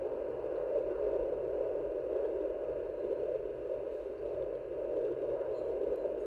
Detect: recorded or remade remade